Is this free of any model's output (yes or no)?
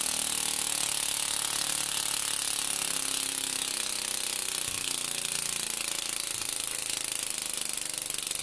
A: yes